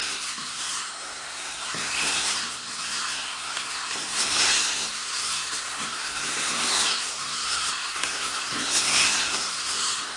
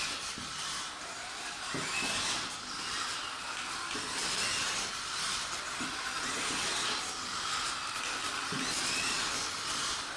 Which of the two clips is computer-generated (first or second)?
first